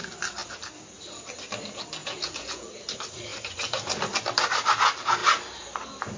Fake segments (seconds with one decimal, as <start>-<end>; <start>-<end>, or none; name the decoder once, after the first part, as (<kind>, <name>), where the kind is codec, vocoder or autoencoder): 2.0-2.7 (vocoder, Vocos)

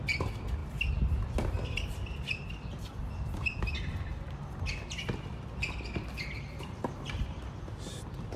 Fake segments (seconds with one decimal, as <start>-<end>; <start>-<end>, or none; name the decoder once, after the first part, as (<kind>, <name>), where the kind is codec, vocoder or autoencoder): none

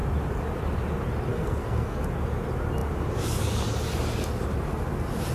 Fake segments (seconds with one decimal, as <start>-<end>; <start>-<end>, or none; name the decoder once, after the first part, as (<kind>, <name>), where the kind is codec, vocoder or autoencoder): 1.3-2.0 (codec, SNAC)

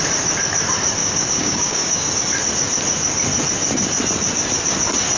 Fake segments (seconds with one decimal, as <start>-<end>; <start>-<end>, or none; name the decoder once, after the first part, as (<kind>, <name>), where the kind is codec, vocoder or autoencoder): 1.0-2.1 (codec, DAC)

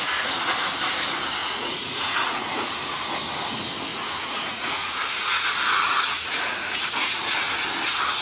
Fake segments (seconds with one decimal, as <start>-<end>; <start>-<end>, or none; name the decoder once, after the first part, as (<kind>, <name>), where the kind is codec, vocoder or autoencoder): 1.4-2.7 (vocoder, Vocos); 3.9-7.5

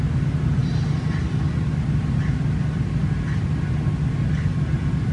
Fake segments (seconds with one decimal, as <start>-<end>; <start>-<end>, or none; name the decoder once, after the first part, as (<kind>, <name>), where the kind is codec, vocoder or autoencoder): none

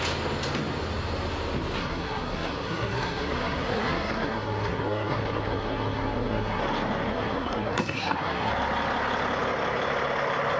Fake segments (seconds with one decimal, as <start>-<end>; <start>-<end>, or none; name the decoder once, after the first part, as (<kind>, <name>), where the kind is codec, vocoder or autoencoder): 1.8-6.6 (codec, SNAC); 7.1-8.5

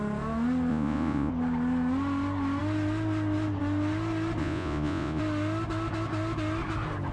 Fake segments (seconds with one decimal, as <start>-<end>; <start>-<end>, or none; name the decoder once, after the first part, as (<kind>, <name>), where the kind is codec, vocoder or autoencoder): 0.7-1.3 (vocoder, Vocos); 4.4-5.2